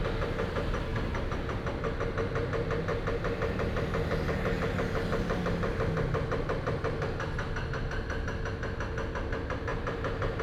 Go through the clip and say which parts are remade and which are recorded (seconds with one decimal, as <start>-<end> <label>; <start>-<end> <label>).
0.0-10.4 recorded